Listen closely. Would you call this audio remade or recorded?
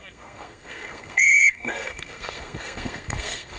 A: remade